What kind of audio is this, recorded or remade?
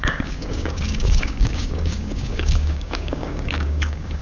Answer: remade